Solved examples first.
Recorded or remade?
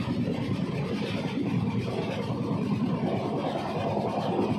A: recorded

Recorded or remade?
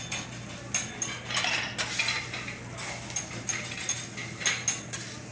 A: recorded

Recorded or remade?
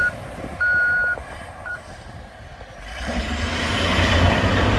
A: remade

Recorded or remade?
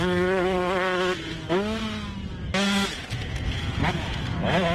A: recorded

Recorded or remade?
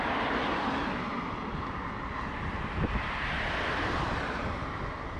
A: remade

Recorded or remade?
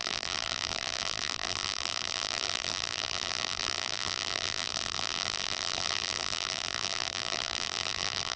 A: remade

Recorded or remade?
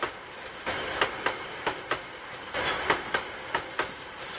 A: recorded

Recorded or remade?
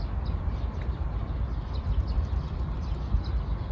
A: recorded